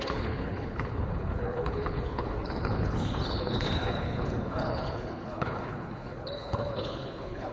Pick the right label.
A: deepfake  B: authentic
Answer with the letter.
A